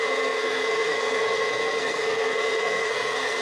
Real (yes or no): no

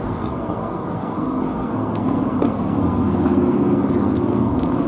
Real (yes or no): no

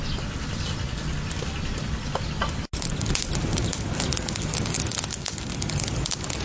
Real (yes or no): yes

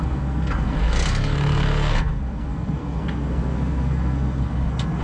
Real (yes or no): no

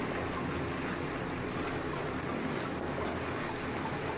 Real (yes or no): yes